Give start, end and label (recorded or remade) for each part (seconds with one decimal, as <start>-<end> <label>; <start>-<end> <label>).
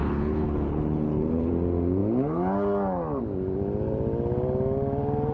0.0-1.5 remade; 1.5-5.3 recorded